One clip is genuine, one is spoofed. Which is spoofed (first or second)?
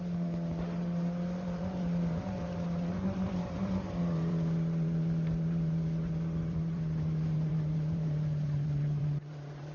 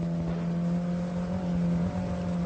first